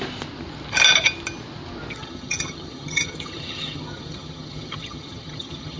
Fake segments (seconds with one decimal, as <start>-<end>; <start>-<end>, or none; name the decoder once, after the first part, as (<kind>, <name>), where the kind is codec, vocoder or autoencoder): 1.9-5.8 (vocoder, HiFi-GAN)